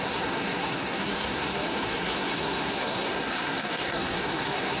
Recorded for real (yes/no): no